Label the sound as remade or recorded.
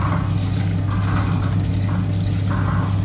recorded